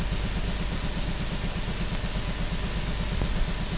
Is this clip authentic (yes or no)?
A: yes